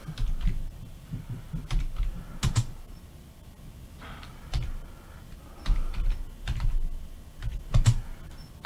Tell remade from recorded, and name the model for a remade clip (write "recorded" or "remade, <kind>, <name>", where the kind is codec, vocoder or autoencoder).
recorded